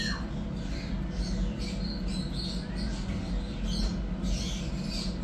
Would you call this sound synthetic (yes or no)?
no